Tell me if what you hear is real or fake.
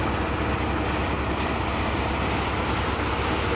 real